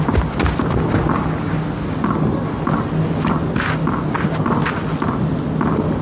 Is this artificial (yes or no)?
no